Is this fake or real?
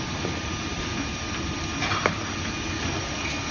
real